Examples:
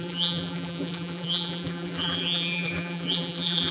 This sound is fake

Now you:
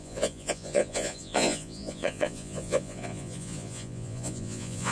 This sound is fake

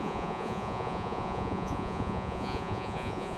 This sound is fake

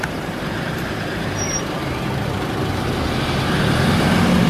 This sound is fake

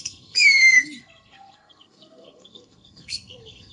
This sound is fake